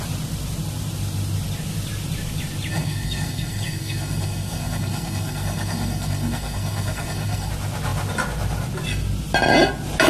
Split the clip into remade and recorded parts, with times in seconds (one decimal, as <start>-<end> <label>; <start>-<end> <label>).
0.0-2.7 recorded; 2.7-7.5 remade; 7.5-10.1 recorded